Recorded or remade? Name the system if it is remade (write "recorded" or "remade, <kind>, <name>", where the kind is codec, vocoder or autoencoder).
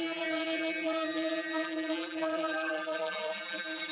remade, vocoder, BigVGAN v2